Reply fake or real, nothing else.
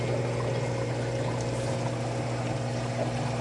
real